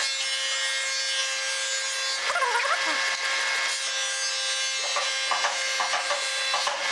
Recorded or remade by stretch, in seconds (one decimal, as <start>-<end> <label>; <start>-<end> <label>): 0.0-6.9 recorded